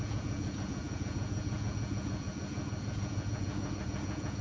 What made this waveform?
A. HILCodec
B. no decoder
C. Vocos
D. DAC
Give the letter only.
C